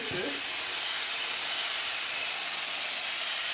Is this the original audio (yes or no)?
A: yes